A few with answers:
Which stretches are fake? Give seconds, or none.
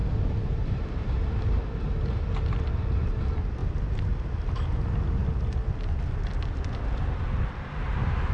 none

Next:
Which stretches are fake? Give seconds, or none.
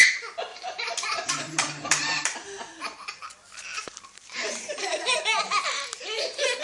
0.5-3.2 (vocoder, BigVGAN v2); 3.7-6.0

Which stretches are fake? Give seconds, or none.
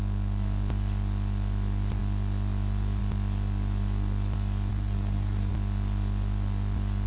4.7-5.5 (codec, SNAC)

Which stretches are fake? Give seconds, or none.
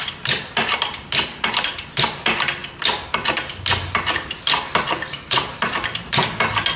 none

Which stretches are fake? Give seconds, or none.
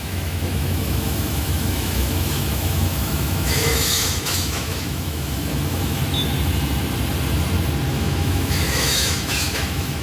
0.0-6.0 (autoencoder, DAC-VAE); 7.9-10.0